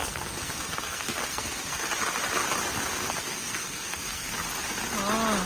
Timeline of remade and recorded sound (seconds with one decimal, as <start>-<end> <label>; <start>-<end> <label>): 0.0-1.9 remade; 1.9-3.0 recorded; 3.0-4.3 remade; 4.3-5.5 recorded